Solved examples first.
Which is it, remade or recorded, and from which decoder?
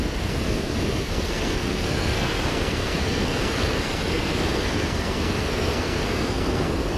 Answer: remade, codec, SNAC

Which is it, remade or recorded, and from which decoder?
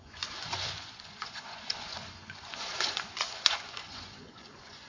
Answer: remade, vocoder, Vocos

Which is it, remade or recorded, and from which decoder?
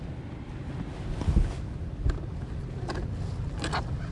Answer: recorded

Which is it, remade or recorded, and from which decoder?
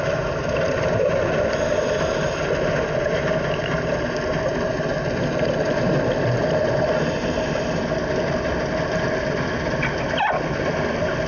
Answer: recorded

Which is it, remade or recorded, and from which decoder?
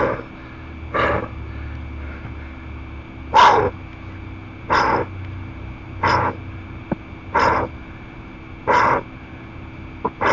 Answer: recorded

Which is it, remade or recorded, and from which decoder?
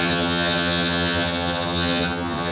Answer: remade, vocoder, HiFi-GAN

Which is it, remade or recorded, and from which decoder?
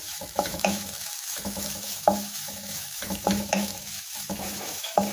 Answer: remade, autoencoder, DAC-VAE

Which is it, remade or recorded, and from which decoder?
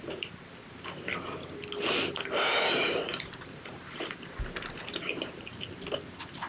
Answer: recorded